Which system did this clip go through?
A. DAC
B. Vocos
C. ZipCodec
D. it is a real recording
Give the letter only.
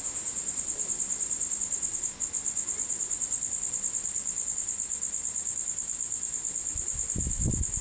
D